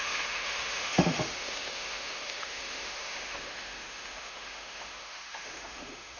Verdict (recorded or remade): remade